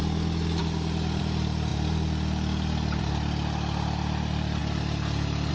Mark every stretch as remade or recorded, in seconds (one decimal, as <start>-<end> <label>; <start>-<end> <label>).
0.0-5.5 recorded